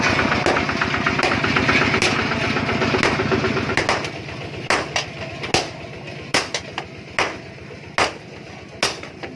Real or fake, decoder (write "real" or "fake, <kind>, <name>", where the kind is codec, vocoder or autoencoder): real